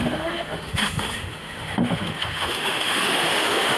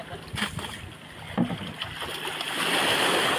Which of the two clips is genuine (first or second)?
second